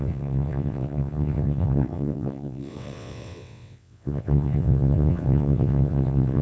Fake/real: fake